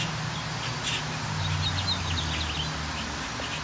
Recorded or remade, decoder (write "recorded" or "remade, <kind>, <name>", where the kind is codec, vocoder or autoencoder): recorded